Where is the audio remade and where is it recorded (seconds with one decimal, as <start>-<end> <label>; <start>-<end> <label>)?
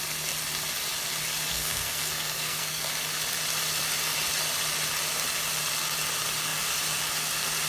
0.0-1.5 recorded; 1.5-2.9 remade; 2.9-7.7 recorded